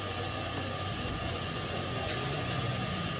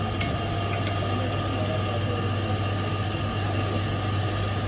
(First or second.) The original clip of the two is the second